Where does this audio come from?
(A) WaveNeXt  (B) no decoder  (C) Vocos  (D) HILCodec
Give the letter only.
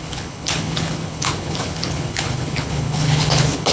D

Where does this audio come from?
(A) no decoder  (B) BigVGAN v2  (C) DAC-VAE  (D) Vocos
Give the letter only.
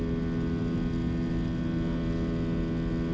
A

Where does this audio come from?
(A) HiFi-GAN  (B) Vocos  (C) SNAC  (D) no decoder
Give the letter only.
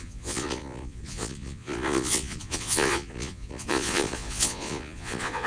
B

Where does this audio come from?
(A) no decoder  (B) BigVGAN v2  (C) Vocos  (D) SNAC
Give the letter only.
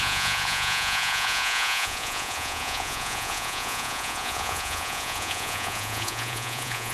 C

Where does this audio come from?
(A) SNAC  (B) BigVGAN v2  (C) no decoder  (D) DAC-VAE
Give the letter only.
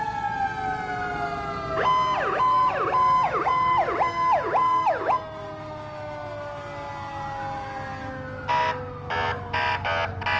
C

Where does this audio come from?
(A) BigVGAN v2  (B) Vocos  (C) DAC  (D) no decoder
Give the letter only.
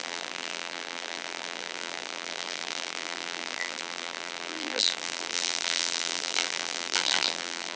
A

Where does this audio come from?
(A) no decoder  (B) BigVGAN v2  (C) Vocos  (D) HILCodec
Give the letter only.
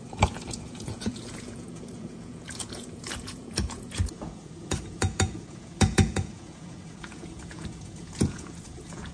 C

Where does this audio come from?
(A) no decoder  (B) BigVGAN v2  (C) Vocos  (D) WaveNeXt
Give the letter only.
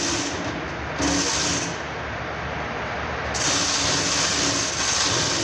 A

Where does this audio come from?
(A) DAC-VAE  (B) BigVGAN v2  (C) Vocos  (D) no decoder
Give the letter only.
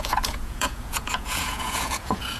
C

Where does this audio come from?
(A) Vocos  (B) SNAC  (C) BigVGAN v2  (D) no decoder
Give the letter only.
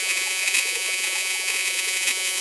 A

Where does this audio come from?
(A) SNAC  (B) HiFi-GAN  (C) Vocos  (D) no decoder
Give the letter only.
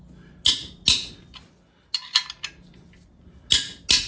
D